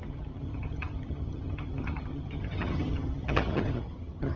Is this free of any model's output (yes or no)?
no